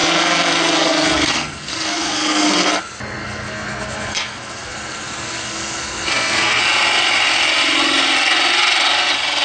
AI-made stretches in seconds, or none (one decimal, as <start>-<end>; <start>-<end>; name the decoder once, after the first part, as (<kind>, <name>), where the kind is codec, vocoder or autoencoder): 0.0-2.8 (codec, SNAC); 3.2-6.6